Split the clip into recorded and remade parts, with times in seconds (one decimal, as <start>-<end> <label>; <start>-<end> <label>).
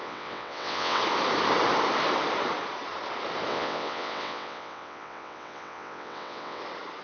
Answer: 0.0-1.0 remade; 1.0-3.5 recorded; 3.5-6.6 remade; 6.6-7.0 recorded